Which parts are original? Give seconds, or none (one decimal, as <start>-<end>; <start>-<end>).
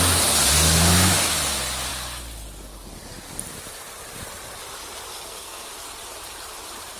0.0-5.1; 5.7-7.0